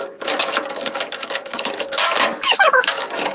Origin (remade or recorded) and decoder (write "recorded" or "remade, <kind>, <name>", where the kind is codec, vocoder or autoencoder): remade, codec, DAC